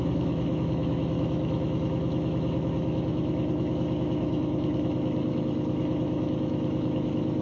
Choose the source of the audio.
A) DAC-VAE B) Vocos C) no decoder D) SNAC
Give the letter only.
A